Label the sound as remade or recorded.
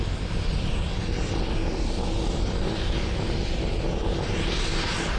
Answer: recorded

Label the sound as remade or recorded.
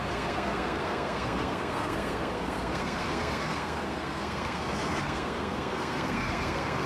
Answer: remade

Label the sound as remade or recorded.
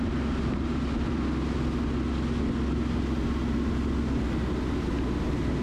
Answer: recorded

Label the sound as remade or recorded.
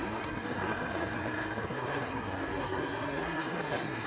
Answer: remade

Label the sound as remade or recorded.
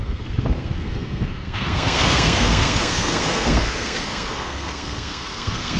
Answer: remade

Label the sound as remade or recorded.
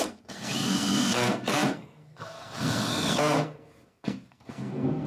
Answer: remade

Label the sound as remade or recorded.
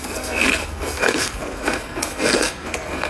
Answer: remade